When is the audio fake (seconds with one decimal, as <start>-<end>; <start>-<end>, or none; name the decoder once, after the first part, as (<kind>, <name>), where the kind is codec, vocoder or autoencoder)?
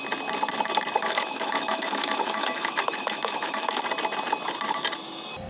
1.0-3.8 (autoencoder, DAC-VAE)